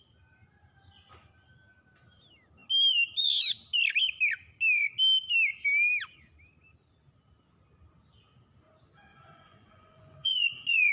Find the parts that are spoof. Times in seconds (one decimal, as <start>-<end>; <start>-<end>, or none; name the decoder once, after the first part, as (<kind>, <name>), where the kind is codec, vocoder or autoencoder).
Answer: 9.1-10.9 (vocoder, Vocos)